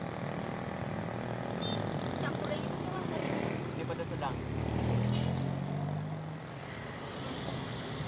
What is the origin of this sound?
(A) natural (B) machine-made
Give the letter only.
A